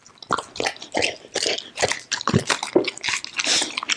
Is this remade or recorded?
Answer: recorded